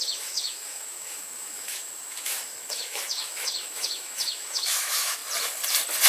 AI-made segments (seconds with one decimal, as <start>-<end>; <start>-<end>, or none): 0.0-5.2

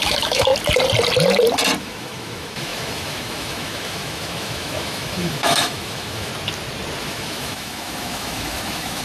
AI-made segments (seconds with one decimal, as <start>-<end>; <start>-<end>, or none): 0.0-0.5; 1.8-6.3; 7.0-9.0

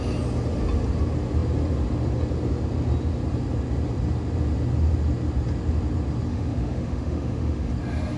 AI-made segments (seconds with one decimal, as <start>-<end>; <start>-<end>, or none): 6.3-7.7

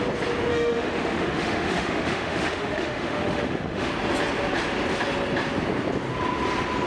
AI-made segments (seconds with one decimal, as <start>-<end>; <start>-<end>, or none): 0.5-3.9